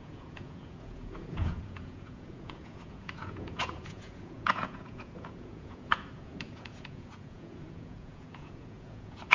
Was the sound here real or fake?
fake